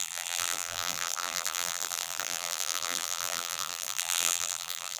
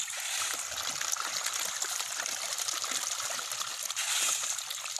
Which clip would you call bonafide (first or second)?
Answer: second